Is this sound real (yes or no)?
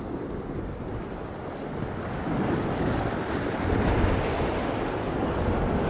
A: yes